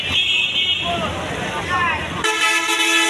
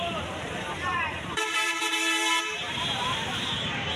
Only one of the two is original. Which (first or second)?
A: first